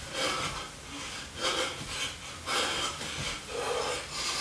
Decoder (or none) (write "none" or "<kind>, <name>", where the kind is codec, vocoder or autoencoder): none